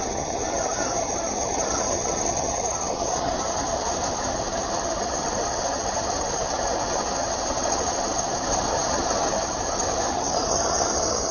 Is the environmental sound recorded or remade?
remade